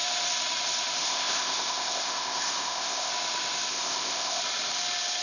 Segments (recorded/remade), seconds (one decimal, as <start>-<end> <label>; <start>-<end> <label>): 0.0-1.0 recorded; 1.0-3.1 remade; 3.1-3.7 recorded; 3.7-4.4 remade; 4.4-5.2 recorded